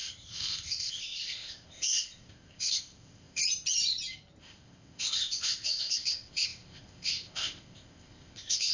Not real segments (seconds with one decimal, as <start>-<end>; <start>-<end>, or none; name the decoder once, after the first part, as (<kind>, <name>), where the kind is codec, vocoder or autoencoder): 0.0-3.4 (codec, ZipCodec); 4.4-8.7